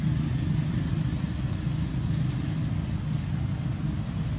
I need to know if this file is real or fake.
real